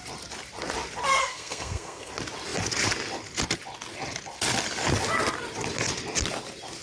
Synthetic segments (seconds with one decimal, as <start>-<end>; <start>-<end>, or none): 1.2-2.1